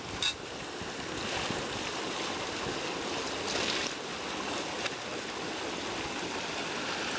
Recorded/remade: recorded